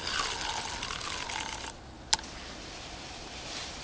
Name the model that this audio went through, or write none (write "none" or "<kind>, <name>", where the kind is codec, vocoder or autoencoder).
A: none